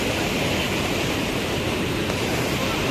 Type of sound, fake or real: real